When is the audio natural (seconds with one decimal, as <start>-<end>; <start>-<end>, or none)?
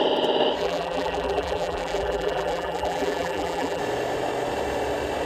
0.0-0.6; 3.8-5.3